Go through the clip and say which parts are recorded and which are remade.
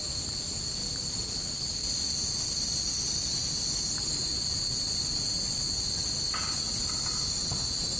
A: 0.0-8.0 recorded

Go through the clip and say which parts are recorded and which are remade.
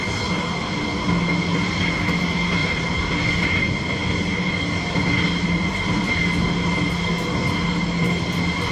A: 0.0-2.6 recorded; 2.6-3.3 remade; 3.3-8.7 recorded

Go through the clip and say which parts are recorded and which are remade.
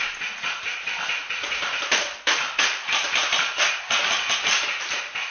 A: 0.0-0.4 recorded; 0.4-3.6 remade; 3.6-5.3 recorded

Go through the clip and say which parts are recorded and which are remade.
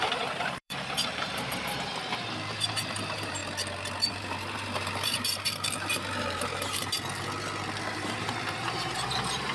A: 0.0-3.4 remade; 3.4-4.1 recorded; 4.1-7.0 remade; 7.0-7.9 recorded; 7.9-9.5 remade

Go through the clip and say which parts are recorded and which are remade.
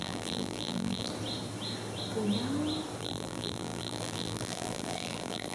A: 0.0-1.1 remade; 1.1-3.0 recorded; 3.0-5.5 remade